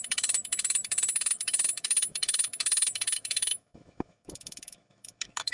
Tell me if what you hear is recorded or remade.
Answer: remade